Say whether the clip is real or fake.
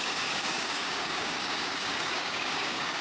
fake